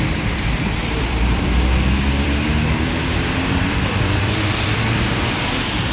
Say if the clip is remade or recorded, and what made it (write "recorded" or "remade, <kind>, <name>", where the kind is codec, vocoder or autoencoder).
remade, vocoder, BigVGAN v2